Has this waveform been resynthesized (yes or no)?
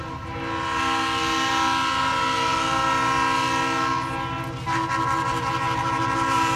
no